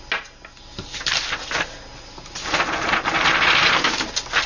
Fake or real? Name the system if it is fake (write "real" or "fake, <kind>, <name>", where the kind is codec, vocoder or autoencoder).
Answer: real